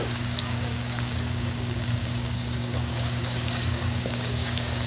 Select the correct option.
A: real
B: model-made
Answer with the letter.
B